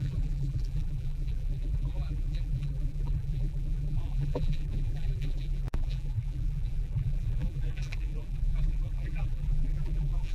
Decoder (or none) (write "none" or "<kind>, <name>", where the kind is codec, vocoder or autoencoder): vocoder, BigVGAN v2